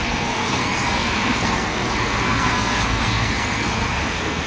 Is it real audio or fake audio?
fake